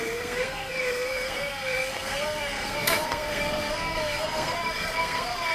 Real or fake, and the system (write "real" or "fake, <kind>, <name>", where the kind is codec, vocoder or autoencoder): fake, codec, SNAC